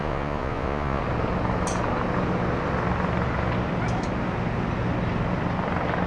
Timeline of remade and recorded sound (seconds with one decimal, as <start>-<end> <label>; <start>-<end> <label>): 0.0-1.0 remade; 1.0-6.1 recorded